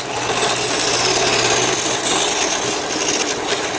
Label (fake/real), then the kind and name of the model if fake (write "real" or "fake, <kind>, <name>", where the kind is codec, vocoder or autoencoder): real